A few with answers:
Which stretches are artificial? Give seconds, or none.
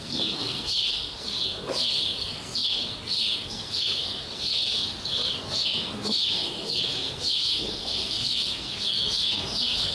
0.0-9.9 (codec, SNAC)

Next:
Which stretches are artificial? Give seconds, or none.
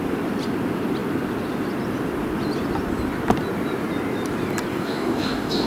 4.7-5.7 (codec, DAC)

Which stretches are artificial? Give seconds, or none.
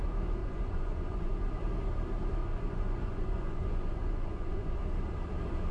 0.4-1.5 (vocoder, Vocos); 2.4-4.8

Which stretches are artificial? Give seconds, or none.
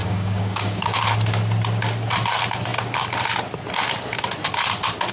0.0-1.0 (codec, DAC)